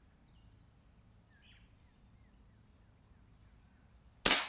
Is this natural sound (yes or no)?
yes